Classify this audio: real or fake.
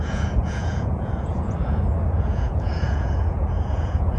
fake